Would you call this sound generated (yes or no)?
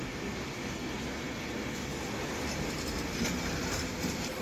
no